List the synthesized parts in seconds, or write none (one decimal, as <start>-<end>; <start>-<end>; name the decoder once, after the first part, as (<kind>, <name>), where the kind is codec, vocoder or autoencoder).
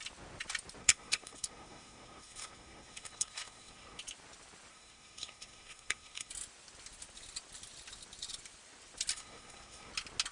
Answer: 0.8-4.0 (codec, SNAC); 4.7-6.3; 9.1-9.9